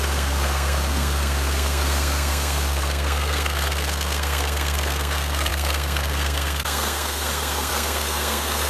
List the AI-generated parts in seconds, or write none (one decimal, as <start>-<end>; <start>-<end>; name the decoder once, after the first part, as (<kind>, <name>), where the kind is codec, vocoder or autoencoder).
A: 0.0-8.7 (codec, SNAC)